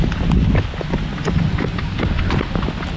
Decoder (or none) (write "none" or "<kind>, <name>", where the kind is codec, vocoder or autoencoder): none